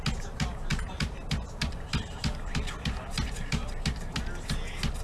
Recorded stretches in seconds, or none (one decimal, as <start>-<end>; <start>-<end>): 0.0-0.7; 3.7-5.0